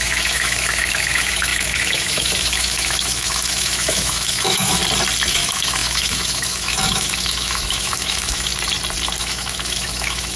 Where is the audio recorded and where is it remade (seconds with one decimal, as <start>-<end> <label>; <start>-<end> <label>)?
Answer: 0.0-4.8 remade; 4.8-5.3 recorded; 5.3-8.5 remade; 8.5-9.2 recorded; 9.2-10.4 remade